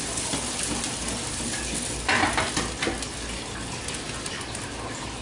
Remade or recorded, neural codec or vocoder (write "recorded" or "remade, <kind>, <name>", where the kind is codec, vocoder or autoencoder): recorded